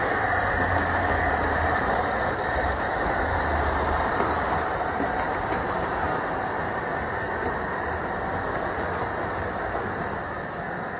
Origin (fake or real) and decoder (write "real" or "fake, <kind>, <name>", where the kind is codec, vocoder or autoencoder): fake, vocoder, BigVGAN v2